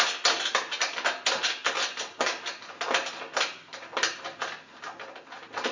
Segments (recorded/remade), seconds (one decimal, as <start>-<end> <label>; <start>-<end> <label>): 0.0-5.7 recorded